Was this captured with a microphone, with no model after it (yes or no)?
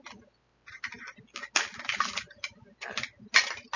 yes